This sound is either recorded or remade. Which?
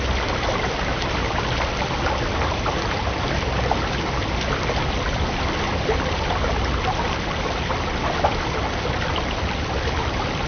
recorded